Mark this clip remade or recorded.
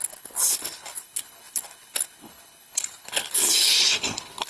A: remade